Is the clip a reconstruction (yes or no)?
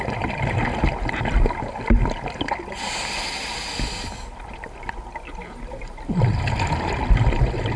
no